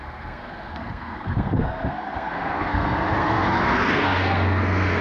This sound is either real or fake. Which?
fake